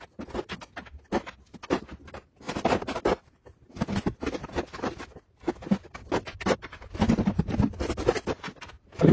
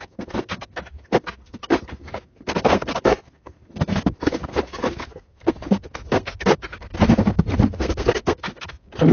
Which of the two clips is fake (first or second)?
second